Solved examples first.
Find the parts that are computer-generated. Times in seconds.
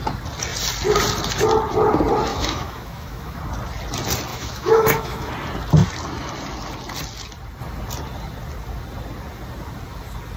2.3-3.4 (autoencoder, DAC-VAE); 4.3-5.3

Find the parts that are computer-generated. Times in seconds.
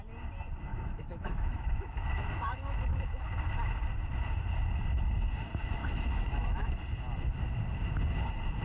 0.7-3.2 (autoencoder, DAC-VAE); 5.8-6.7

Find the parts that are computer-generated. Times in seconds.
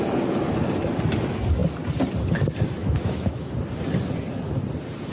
2.8-3.5 (autoencoder, DAC-VAE)